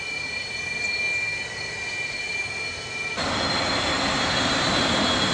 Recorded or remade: recorded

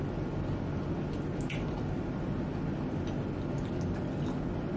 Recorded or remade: recorded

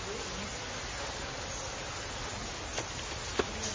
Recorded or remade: recorded